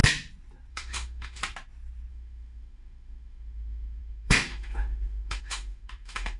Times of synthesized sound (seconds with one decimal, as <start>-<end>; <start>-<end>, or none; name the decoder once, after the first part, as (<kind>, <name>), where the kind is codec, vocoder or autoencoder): 0.7-1.4 (autoencoder, DAC-VAE); 2.1-6.4